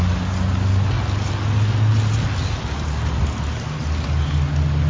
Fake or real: real